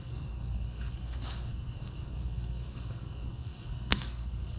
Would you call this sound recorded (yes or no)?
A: no